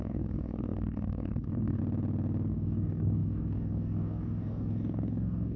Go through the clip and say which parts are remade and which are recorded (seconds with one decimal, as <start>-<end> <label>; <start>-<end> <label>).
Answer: 0.0-1.8 remade; 1.8-2.5 recorded; 2.5-5.6 remade